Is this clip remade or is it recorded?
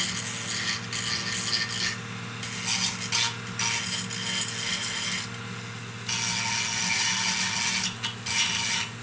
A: recorded